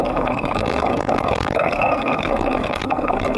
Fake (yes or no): yes